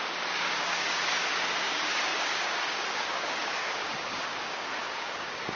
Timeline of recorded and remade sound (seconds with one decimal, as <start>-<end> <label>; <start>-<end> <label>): 0.0-5.6 remade